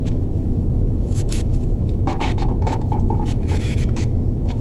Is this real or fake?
fake